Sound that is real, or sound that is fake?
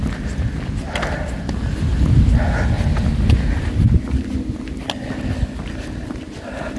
real